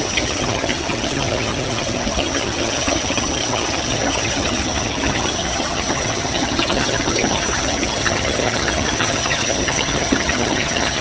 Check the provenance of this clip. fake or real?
fake